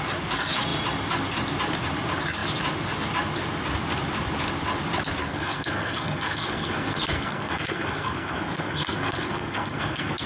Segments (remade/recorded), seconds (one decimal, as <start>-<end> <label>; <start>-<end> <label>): 0.0-5.2 recorded; 5.2-10.3 remade